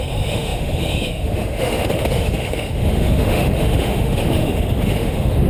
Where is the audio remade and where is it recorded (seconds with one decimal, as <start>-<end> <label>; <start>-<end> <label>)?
0.0-5.5 remade